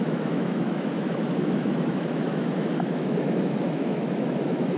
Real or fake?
fake